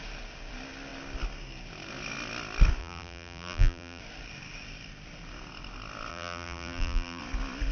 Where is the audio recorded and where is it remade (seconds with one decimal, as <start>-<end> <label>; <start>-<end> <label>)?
0.0-2.8 recorded; 2.8-4.0 remade; 4.0-6.1 recorded; 6.1-7.2 remade; 7.2-7.7 recorded